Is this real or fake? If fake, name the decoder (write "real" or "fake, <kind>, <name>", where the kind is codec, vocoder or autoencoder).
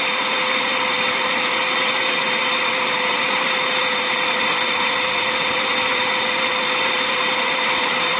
real